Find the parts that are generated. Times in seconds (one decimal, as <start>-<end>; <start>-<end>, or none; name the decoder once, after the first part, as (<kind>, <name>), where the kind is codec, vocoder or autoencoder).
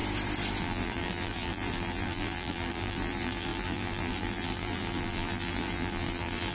0.6-6.5 (vocoder, BigVGAN v2)